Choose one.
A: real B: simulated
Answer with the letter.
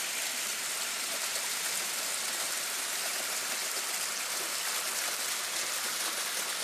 A